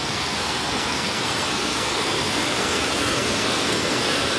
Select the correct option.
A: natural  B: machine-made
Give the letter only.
B